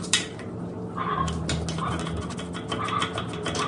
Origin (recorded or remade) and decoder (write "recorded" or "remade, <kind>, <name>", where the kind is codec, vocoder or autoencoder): recorded